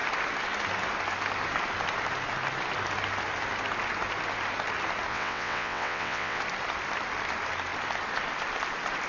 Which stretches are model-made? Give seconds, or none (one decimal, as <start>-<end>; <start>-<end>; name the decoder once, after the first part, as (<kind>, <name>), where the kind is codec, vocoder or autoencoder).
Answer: 5.1-6.4 (vocoder, WaveNeXt)